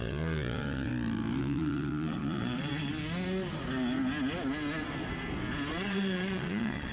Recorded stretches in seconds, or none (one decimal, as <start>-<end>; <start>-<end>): 0.9-1.4; 2.9-5.7